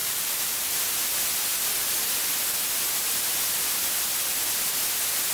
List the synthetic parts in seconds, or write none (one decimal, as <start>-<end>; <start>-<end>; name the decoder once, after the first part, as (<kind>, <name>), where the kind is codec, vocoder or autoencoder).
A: 0.0-0.7 (vocoder, BigVGAN v2)